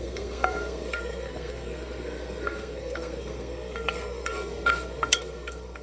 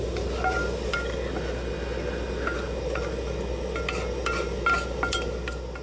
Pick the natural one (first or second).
second